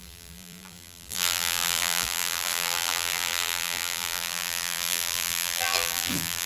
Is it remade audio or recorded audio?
remade